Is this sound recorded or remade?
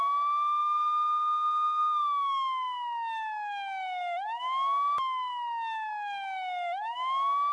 remade